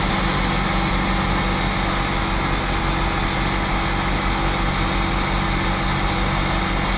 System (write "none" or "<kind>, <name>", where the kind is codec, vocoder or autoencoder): none